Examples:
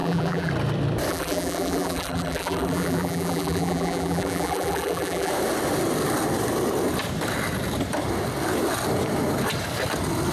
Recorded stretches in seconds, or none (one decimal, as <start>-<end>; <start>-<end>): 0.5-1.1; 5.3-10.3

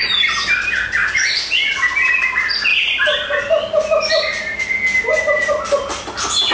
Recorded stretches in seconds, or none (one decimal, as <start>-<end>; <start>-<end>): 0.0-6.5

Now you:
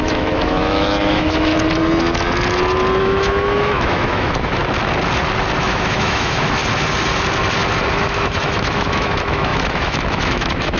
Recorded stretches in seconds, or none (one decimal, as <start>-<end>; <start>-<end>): 1.5-3.0; 4.6-5.6; 6.6-7.9

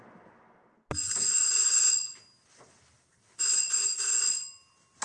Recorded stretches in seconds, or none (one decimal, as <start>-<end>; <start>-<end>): 0.0-5.0